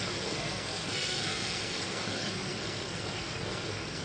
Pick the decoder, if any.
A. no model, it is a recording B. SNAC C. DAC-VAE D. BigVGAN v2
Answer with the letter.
B